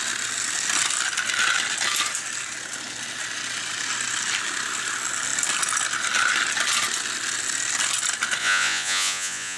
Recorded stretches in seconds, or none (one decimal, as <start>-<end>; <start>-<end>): 0.0-8.4